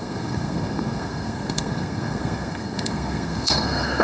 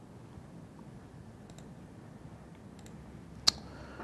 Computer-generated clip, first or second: first